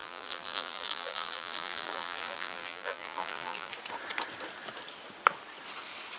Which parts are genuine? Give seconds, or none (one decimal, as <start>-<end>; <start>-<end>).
3.7-6.2